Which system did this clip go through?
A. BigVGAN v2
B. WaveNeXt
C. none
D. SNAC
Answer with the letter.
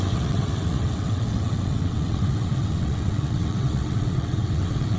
B